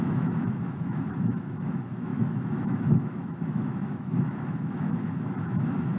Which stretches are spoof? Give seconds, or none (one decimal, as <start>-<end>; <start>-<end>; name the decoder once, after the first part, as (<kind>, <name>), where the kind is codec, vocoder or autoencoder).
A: 0.0-6.0 (autoencoder, DAC-VAE)